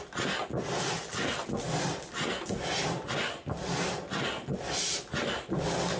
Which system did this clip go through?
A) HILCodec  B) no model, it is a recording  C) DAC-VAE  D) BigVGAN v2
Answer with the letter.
B